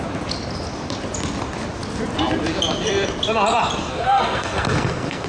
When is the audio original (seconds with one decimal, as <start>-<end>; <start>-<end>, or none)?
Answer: 0.0-3.8